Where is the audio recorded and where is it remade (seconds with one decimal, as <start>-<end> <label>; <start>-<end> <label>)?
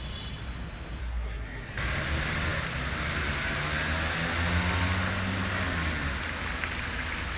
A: 0.0-1.0 recorded; 1.0-1.7 remade; 1.7-7.4 recorded